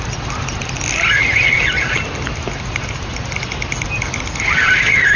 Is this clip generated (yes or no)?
no